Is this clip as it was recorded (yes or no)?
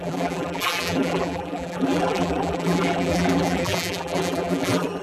no